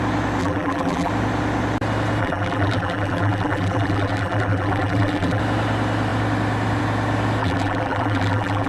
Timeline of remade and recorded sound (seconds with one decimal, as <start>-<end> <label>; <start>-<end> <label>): 0.0-0.4 recorded; 0.4-1.1 remade; 1.1-2.2 recorded; 2.2-5.4 remade; 5.4-7.4 recorded; 7.4-8.7 remade